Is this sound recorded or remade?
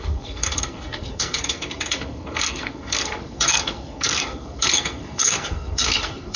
remade